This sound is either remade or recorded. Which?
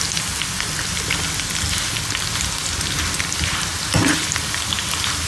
recorded